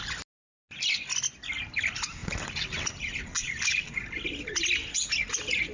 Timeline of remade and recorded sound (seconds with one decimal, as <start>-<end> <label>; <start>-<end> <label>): 0.0-5.7 recorded